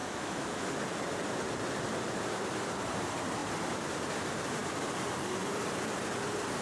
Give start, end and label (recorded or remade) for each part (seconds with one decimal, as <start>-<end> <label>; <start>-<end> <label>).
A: 0.0-0.7 remade; 0.7-6.6 recorded